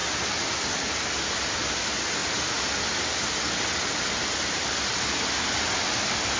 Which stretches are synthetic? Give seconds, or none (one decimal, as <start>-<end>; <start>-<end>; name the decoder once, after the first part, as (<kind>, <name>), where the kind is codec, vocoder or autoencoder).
none